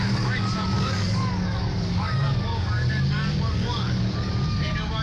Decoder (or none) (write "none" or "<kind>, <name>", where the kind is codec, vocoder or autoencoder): codec, DAC